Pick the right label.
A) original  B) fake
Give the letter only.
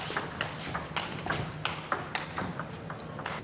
A